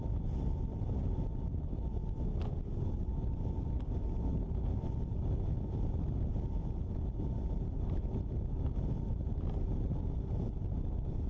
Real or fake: real